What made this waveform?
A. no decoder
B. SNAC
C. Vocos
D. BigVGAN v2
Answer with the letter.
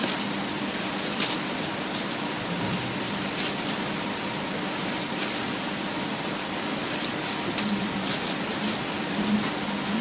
D